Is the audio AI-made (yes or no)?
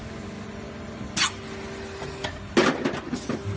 no